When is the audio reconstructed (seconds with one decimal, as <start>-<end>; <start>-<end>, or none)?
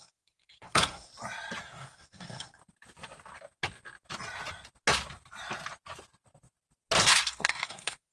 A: 0.0-1.1; 1.6-2.6; 7.0-8.1